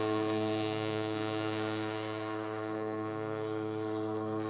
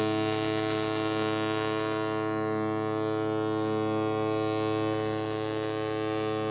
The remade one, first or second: first